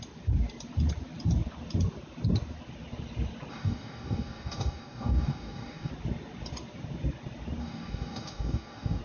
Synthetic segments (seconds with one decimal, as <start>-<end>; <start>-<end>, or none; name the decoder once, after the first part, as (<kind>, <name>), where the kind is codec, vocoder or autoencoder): 3.5-5.9 (codec, DAC); 7.6-9.0